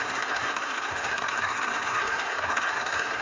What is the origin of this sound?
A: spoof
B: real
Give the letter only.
A